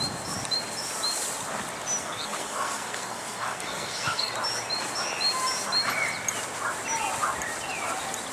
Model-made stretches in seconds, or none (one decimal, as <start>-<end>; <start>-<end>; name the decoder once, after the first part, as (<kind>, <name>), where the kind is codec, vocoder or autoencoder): 2.0-4.3 (codec, SNAC)